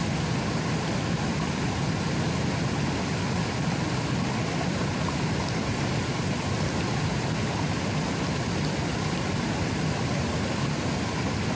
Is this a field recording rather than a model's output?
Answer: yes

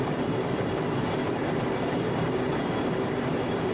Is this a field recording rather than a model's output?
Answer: no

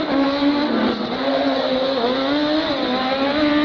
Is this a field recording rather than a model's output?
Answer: no